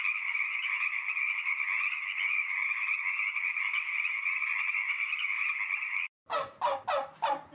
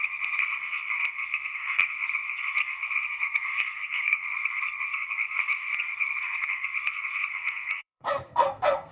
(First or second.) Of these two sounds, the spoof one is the second